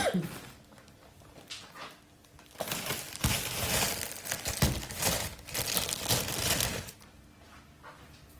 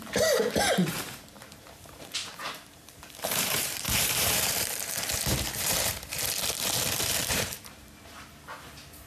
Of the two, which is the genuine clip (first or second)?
first